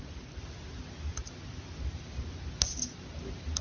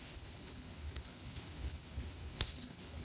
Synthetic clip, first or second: second